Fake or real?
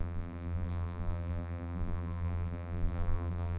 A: fake